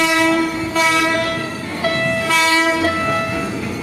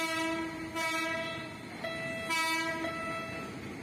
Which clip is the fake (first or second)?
first